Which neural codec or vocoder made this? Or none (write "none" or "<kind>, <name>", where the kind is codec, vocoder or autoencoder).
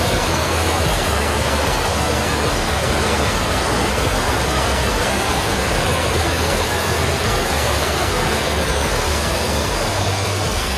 codec, SNAC